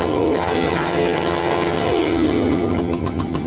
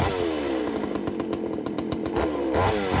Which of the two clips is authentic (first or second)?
second